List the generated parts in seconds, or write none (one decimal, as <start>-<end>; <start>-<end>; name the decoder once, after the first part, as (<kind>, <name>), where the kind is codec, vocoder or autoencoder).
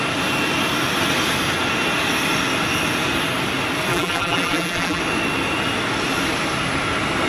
3.9-5.0 (vocoder, BigVGAN v2)